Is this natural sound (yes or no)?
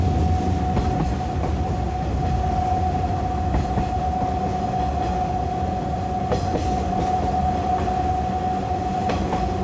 yes